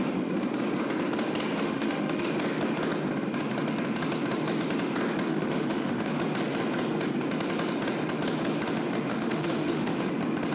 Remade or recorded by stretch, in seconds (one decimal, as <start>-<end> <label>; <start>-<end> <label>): 0.0-1.6 recorded; 1.6-2.3 remade; 2.3-5.3 recorded; 5.3-6.1 remade; 6.1-9.1 recorded; 9.1-10.1 remade; 10.1-10.5 recorded